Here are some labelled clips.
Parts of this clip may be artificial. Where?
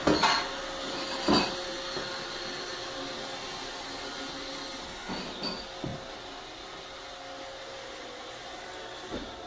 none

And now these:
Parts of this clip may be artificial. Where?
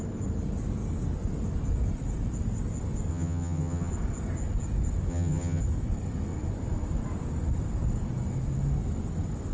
3.1-3.9 (vocoder, HiFi-GAN); 5.1-5.6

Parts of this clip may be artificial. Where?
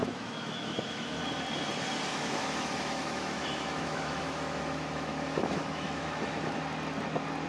0.0-1.2 (autoencoder, DAC-VAE); 2.1-6.6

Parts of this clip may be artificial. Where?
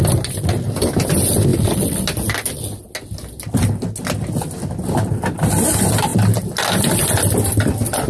none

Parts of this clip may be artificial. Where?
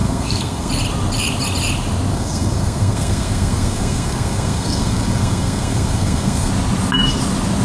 0.0-0.7 (codec, SNAC); 2.1-6.5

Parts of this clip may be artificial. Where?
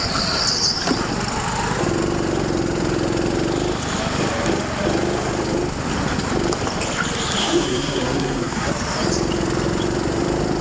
7.4-8.7 (codec, SNAC)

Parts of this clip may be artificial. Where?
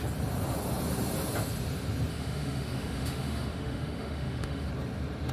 2.1-4.7 (autoencoder, DAC-VAE)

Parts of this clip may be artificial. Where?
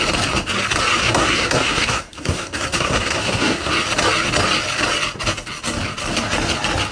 1.0-3.7 (codec, SNAC)